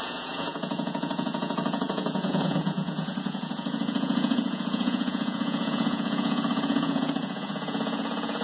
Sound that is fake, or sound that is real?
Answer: fake